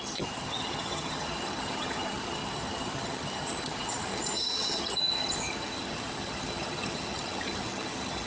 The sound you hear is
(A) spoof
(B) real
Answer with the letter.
A